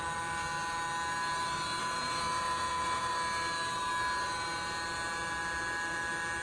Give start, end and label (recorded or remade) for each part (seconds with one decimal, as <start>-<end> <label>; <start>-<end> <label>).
0.0-1.8 recorded; 1.8-3.1 remade; 3.1-6.4 recorded